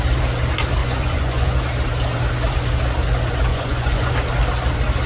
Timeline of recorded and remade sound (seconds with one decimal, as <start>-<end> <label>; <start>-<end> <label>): 0.0-0.8 recorded; 0.8-1.6 remade; 1.6-3.5 recorded; 3.5-4.1 remade; 4.1-5.1 recorded